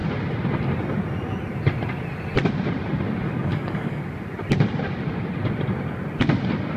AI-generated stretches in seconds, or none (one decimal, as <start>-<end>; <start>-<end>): 3.5-4.0